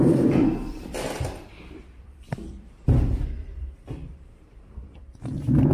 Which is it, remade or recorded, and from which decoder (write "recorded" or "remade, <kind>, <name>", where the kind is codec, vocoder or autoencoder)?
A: remade, vocoder, BigVGAN v2